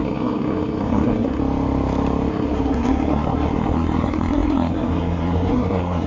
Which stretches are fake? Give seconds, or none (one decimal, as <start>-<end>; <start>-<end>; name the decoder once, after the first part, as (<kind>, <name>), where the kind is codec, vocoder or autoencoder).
0.0-1.4 (codec, SNAC); 2.3-6.1